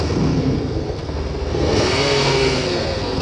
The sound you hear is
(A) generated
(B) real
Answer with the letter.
A